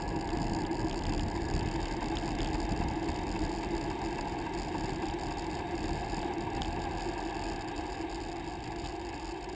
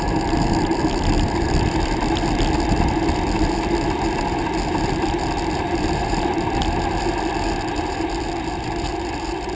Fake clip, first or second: second